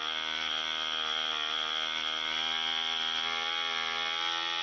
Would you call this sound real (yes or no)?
yes